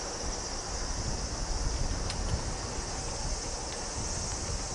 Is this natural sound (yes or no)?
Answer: yes